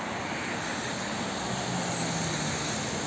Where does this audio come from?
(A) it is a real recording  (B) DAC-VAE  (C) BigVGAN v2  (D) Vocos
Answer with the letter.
A